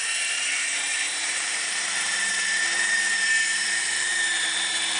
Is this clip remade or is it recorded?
remade